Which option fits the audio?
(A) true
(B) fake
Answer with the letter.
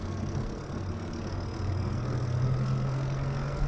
B